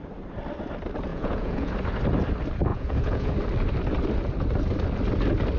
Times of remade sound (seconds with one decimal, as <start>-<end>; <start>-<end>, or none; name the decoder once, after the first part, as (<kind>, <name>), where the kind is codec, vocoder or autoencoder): 1.1-1.7 (vocoder, Vocos); 2.7-3.3